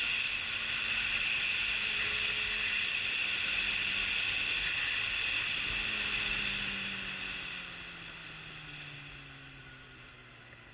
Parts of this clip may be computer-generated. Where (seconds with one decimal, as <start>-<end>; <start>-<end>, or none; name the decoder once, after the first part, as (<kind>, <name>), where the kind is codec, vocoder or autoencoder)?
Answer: none